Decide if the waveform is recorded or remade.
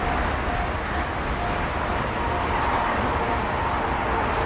recorded